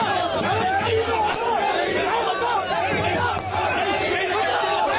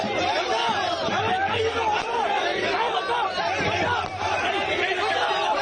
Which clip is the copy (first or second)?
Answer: second